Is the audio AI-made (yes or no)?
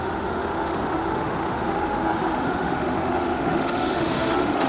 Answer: yes